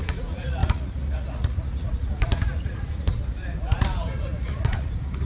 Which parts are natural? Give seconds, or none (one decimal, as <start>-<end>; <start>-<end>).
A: none